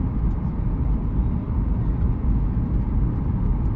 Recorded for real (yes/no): yes